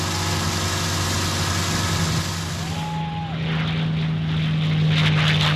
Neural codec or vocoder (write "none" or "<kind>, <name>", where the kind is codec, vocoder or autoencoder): none